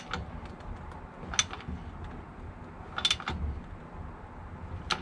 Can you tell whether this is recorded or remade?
recorded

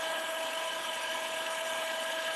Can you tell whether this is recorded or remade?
remade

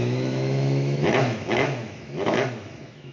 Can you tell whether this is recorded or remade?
remade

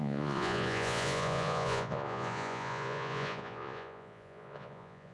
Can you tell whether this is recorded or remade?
remade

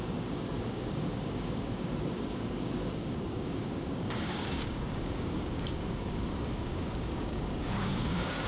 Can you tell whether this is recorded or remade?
remade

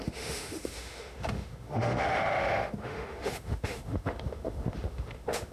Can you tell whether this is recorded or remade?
remade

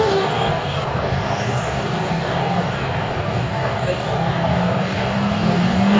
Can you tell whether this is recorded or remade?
remade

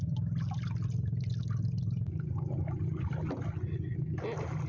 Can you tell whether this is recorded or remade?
recorded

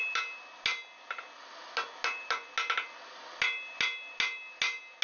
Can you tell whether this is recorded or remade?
recorded